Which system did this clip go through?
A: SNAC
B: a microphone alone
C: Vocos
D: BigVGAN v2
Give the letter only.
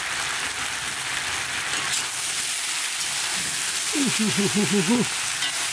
B